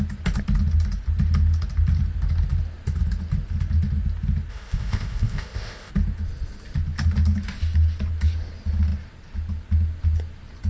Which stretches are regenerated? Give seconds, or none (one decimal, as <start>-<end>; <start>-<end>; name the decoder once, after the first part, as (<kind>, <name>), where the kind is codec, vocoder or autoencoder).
4.5-5.9 (codec, ZipCodec)